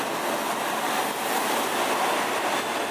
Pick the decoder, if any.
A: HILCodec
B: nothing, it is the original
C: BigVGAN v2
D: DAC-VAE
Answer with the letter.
B